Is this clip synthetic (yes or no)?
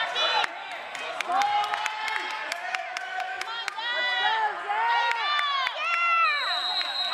no